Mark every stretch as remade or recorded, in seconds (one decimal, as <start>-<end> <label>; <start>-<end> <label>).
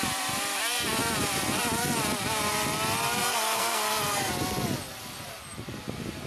0.0-3.2 recorded; 3.2-4.3 remade; 4.3-6.3 recorded